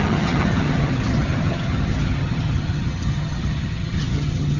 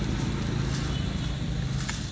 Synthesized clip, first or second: first